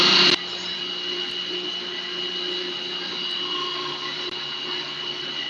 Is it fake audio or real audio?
fake